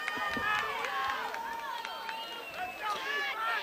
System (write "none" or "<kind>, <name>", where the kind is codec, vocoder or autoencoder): none